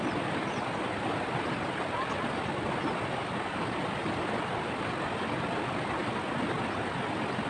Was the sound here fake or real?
real